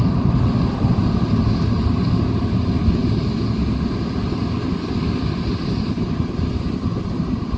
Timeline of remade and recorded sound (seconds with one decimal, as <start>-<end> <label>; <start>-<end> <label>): 0.0-7.6 recorded